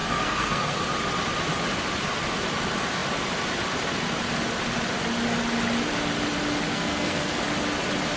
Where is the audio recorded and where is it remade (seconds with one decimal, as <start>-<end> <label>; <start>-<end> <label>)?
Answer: 0.0-0.8 remade; 0.8-6.7 recorded; 6.7-7.4 remade; 7.4-8.2 recorded